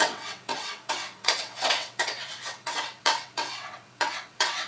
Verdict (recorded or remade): remade